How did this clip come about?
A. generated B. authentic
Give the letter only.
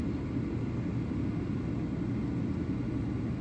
B